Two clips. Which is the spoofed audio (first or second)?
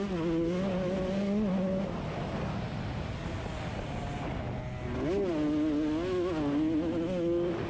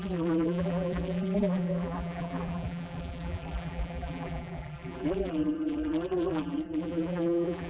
second